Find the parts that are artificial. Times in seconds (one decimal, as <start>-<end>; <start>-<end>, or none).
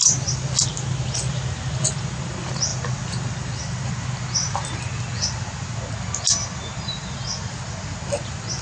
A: none